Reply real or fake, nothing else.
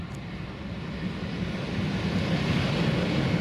real